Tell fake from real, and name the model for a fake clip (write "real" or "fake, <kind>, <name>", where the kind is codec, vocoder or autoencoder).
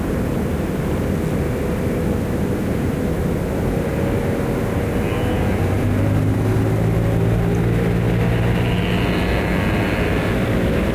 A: real